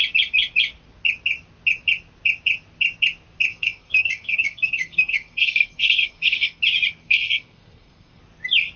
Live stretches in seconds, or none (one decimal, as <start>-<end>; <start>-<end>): 0.0-3.5; 6.6-7.0; 8.2-8.8